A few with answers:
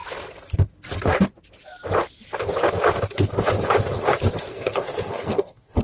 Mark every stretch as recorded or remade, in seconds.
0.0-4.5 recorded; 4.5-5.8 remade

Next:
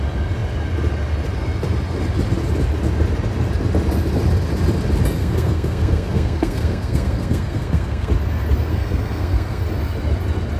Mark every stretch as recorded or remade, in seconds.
0.0-5.2 recorded; 5.2-8.1 remade; 8.1-8.7 recorded; 8.7-9.6 remade; 9.6-10.6 recorded

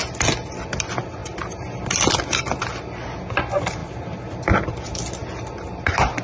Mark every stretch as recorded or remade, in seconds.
0.0-6.2 recorded

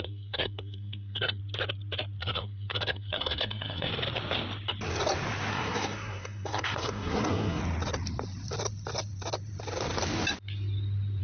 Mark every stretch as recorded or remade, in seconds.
0.0-1.4 remade; 1.4-2.2 recorded; 2.2-3.9 remade; 3.9-5.5 recorded; 5.5-7.6 remade; 7.6-11.2 recorded

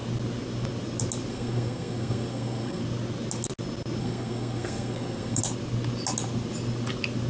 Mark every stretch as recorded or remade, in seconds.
0.0-1.3 recorded; 1.3-2.8 remade; 2.8-4.0 recorded; 4.0-5.4 remade; 5.4-7.3 recorded

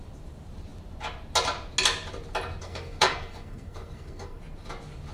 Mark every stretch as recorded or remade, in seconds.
0.0-2.6 recorded; 2.6-4.4 remade; 4.4-5.1 recorded